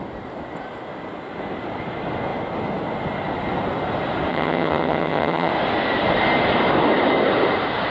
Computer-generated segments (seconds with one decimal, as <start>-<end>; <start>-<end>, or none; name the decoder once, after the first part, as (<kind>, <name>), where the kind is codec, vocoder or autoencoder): 4.3-5.5 (vocoder, HiFi-GAN)

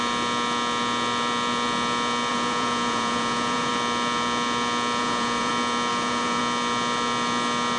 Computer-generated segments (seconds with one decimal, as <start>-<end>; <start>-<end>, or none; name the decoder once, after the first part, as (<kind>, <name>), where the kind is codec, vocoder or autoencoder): 2.3-3.7 (vocoder, Vocos); 5.0-5.5; 5.9-6.4

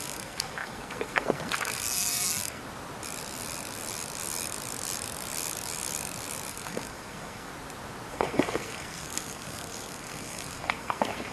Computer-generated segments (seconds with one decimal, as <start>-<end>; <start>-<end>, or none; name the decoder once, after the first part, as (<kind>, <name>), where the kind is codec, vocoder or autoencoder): 0.0-2.6 (codec, SNAC); 6.5-7.5; 8.1-11.3

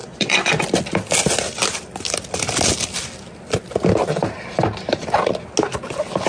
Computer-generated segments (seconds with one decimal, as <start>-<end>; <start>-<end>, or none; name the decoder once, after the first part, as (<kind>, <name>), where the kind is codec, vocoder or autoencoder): 0.0-0.5 (vocoder, Vocos)